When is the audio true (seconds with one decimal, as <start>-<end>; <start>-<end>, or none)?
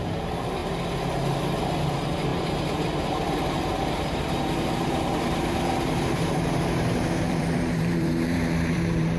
0.6-1.6